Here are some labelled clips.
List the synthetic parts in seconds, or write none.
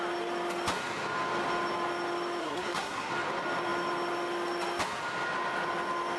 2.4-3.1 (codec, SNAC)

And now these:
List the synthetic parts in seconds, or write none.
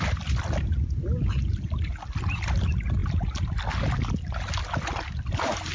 none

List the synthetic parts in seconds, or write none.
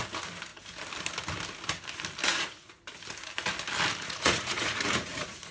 2.3-2.8 (vocoder, Vocos); 4.0-5.5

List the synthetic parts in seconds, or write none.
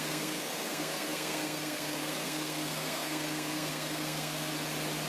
0.0-4.5 (codec, SNAC)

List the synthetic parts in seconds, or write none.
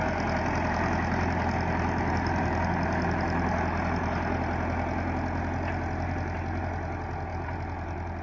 7.3-8.2 (vocoder, BigVGAN v2)